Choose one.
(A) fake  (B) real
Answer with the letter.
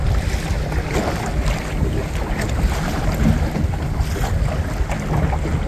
B